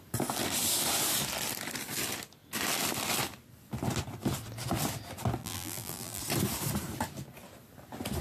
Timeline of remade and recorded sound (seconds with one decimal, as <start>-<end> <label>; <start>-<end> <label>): 0.0-5.4 recorded; 5.4-6.2 remade; 6.2-8.2 recorded